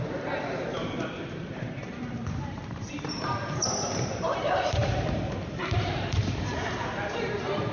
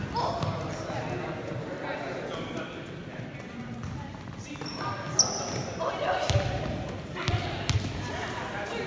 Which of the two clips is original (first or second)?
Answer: second